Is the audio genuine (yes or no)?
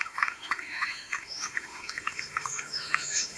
no